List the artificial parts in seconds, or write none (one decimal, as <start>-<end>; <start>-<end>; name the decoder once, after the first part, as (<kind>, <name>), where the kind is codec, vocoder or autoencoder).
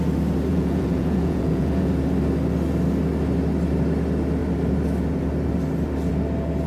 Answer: 0.5-1.9 (vocoder, Vocos)